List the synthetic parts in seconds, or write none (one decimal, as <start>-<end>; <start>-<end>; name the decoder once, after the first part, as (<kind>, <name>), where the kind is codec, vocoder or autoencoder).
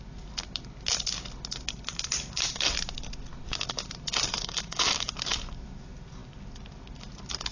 4.3-5.1 (autoencoder, DAC-VAE)